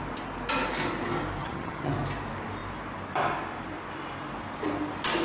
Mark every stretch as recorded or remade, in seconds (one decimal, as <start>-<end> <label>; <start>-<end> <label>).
0.0-1.4 recorded; 1.4-1.9 remade; 1.9-5.2 recorded